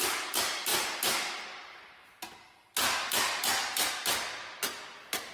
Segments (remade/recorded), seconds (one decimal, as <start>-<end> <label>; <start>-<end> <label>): 0.0-5.3 recorded